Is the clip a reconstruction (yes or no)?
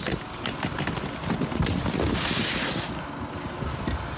no